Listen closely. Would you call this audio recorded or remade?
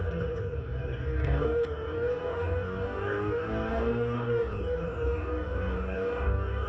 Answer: remade